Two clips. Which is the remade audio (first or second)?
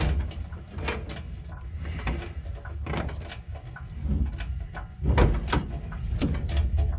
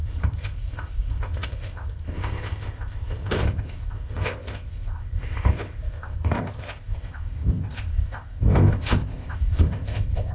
second